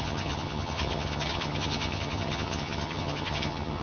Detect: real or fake fake